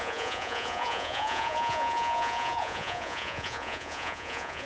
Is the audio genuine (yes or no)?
no